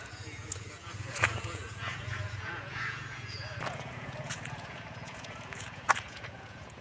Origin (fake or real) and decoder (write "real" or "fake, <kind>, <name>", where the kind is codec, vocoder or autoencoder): fake, vocoder, Vocos